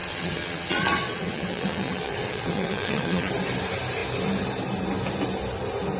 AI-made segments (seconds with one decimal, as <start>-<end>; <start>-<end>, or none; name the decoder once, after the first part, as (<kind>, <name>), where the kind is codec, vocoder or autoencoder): 0.0-3.3 (vocoder, WaveNeXt)